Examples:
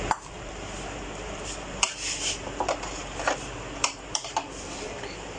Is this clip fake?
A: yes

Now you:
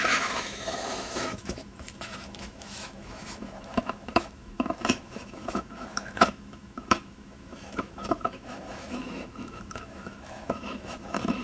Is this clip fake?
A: yes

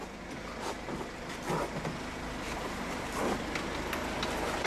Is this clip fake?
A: no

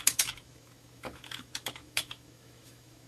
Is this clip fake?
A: yes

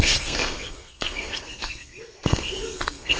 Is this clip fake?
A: yes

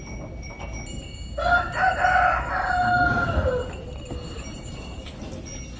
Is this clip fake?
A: no